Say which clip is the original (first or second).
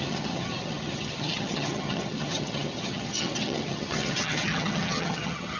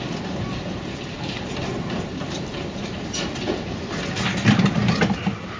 second